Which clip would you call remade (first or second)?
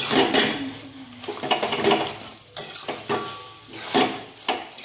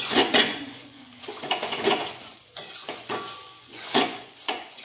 second